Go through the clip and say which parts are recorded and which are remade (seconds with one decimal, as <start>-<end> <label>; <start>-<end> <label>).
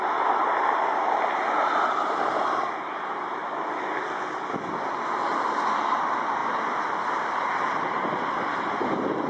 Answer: 0.0-9.3 recorded